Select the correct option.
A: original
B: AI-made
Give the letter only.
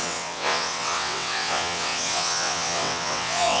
B